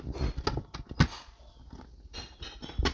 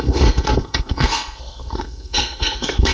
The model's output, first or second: second